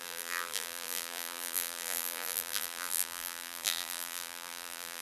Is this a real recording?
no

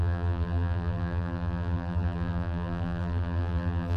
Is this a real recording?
no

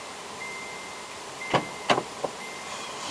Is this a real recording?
yes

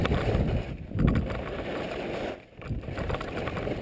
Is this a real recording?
yes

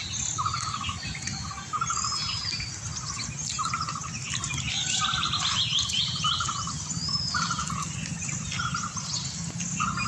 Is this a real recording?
yes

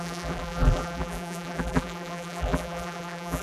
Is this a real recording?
no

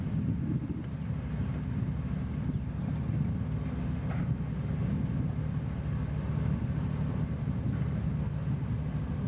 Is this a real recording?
yes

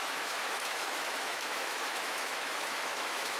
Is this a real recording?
no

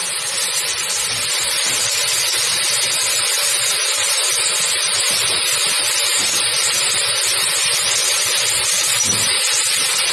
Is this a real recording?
yes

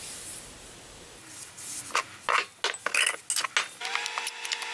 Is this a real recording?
yes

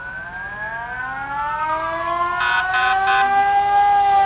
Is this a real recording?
yes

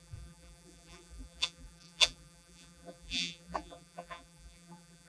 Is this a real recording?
no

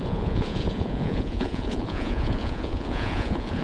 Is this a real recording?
no